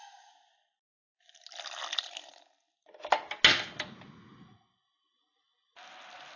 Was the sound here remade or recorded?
recorded